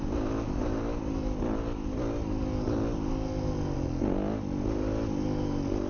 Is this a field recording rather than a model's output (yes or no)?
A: yes